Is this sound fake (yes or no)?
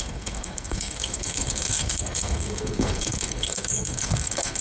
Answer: yes